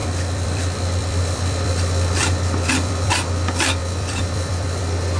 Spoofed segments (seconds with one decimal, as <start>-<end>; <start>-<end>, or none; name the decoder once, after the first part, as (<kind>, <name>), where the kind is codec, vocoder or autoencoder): 0.0-3.1 (vocoder, BigVGAN v2); 3.8-4.8